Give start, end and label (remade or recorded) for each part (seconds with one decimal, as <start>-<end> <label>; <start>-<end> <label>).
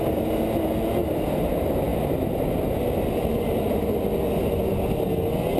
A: 0.0-5.6 recorded